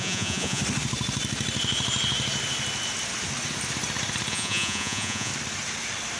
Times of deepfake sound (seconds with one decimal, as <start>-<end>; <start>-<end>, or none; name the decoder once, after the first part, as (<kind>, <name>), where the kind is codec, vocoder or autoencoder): 0.0-0.6 (vocoder, Vocos); 4.3-5.3

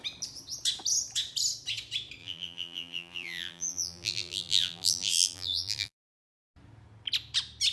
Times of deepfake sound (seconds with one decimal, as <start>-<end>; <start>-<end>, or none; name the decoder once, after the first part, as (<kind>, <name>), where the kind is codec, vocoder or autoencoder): 2.2-6.0 (vocoder, BigVGAN v2)

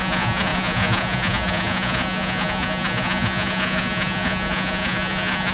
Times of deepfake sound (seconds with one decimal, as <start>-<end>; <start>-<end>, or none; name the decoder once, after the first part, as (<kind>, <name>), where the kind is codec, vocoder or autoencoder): 0.0-5.5 (vocoder, Vocos)

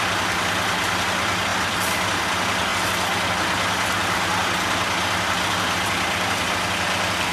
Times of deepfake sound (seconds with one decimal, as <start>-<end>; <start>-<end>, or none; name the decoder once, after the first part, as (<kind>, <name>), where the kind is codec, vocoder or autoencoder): 1.5-2.2 (vocoder, BigVGAN v2)

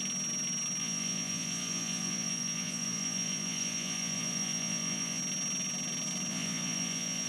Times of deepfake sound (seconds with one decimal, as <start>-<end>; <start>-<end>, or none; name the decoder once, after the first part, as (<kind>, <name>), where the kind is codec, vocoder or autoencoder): 0.8-5.2 (vocoder, Vocos); 6.3-7.3